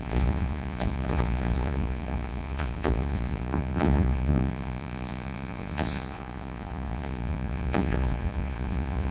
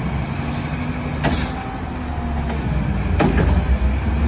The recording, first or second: second